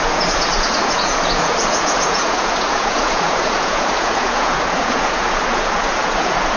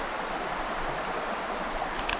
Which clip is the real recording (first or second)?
second